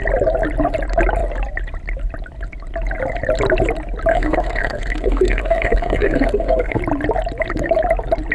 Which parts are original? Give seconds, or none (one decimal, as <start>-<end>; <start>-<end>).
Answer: 0.0-4.1; 6.8-8.3